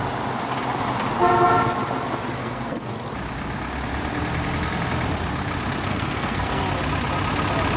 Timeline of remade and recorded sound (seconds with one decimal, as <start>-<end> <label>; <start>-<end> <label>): 0.0-2.4 recorded; 2.4-2.9 remade; 2.9-5.9 recorded; 5.9-6.6 remade; 6.6-7.8 recorded